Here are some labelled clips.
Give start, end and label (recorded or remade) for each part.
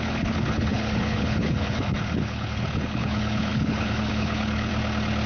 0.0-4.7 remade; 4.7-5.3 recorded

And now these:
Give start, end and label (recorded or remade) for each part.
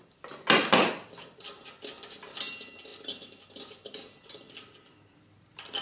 0.0-2.9 recorded; 2.9-3.4 remade; 3.4-5.8 recorded